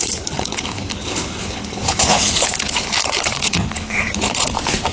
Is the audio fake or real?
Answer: fake